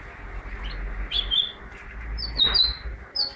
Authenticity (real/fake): real